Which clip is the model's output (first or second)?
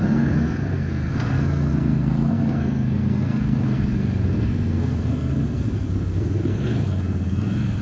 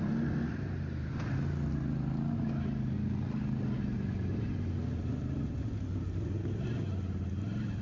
first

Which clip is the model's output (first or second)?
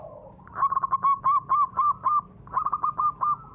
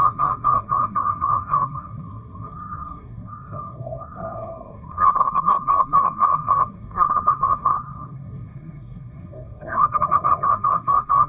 second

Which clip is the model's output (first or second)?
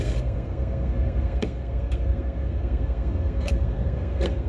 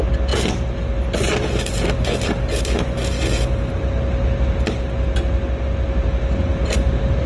first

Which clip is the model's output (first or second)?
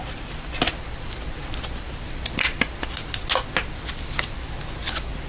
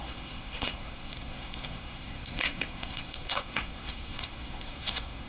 second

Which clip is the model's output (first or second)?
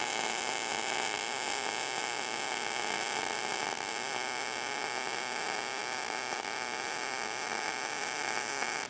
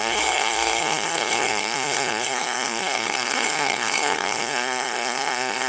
second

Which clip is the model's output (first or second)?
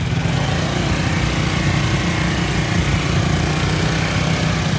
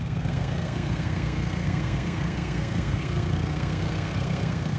second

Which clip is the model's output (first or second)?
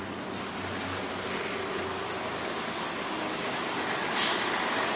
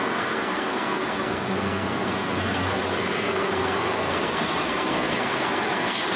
second